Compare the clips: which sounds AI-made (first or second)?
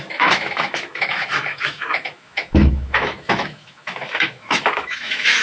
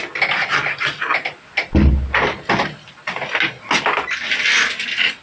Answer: first